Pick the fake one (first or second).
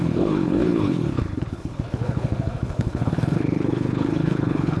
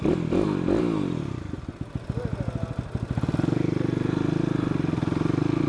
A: first